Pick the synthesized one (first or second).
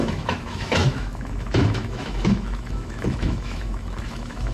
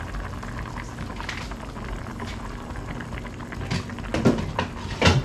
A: first